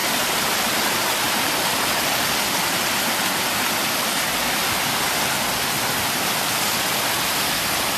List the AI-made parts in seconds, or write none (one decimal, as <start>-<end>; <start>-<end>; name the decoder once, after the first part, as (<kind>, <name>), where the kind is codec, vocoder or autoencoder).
0.0-2.3 (vocoder, BigVGAN v2)